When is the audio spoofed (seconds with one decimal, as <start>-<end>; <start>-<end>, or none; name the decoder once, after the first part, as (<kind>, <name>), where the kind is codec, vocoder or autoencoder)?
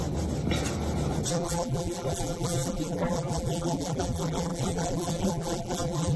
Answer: 1.3-6.2 (vocoder, BigVGAN v2)